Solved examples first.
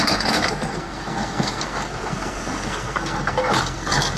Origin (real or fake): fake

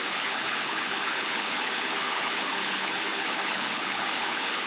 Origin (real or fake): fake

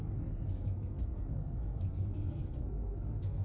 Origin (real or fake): fake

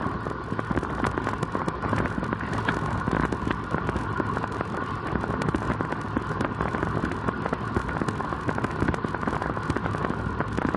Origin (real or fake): real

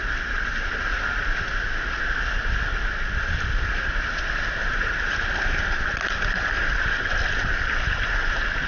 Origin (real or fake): real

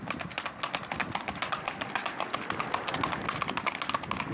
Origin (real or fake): real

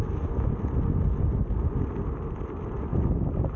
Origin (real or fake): real